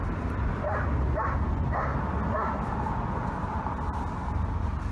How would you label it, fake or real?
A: real